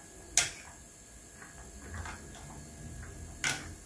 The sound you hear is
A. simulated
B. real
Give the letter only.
B